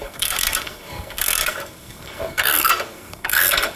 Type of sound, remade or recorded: remade